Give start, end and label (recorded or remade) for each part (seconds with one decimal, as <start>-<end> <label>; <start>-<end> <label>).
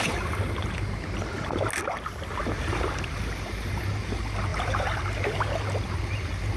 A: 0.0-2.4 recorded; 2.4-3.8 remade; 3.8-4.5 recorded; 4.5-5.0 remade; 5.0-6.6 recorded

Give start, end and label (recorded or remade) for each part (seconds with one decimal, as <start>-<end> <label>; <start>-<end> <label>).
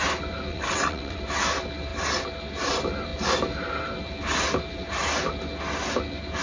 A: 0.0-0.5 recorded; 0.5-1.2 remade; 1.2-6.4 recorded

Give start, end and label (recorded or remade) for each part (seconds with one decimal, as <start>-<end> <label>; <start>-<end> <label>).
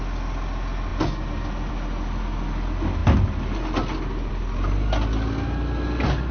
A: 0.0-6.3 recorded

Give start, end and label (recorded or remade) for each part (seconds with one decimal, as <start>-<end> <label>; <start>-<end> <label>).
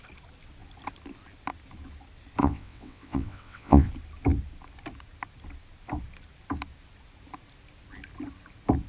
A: 0.0-2.4 recorded; 2.4-3.9 remade; 3.9-8.9 recorded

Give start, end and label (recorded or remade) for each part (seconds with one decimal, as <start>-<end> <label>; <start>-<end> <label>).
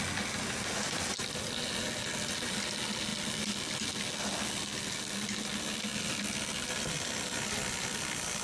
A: 0.0-8.4 recorded